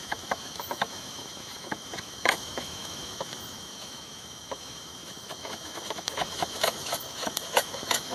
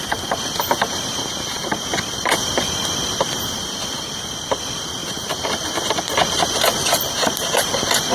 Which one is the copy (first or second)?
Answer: first